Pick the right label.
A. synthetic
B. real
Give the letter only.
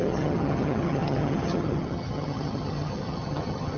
A